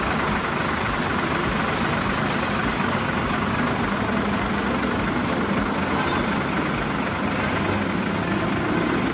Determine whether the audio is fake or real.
real